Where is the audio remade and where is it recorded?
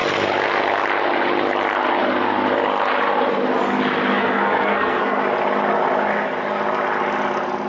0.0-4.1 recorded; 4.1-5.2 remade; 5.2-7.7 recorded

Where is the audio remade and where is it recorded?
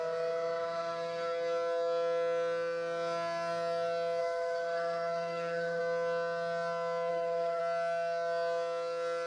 0.0-4.2 recorded; 4.2-5.8 remade; 5.8-7.1 recorded; 7.1-7.6 remade; 7.6-9.3 recorded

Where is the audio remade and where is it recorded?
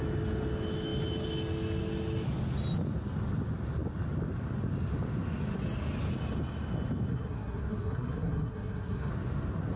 0.0-7.1 recorded; 7.1-9.1 remade; 9.1-9.8 recorded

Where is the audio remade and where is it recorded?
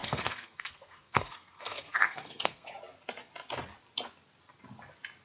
0.0-2.7 remade; 2.7-5.2 recorded